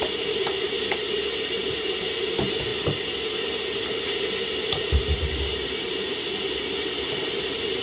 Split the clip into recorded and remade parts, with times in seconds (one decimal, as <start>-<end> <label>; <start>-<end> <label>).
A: 0.0-7.8 recorded